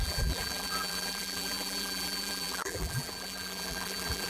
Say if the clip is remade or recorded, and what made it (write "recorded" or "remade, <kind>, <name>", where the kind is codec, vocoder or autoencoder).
remade, vocoder, BigVGAN v2